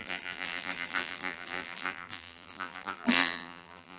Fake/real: fake